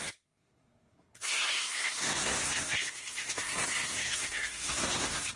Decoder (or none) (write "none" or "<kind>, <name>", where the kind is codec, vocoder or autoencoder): codec, SNAC